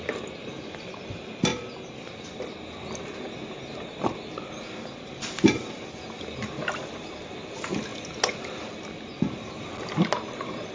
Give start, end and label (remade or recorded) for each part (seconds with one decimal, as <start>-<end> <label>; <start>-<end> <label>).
0.0-10.7 recorded